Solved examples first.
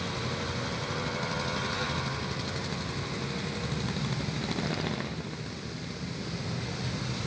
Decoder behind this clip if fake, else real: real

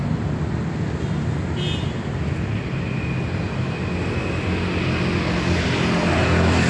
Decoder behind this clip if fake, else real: real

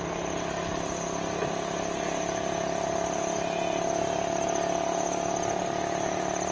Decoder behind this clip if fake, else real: real